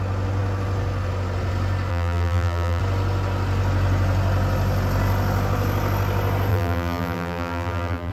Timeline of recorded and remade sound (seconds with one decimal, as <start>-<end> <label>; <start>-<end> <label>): 0.0-1.9 recorded; 1.9-2.8 remade; 2.8-6.5 recorded; 6.5-8.1 remade